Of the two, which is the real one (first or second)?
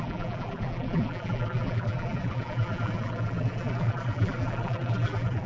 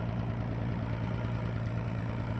second